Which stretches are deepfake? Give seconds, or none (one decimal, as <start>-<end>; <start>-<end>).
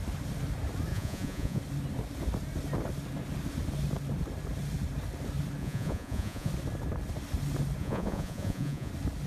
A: 0.9-1.6; 5.6-6.5; 7.8-8.9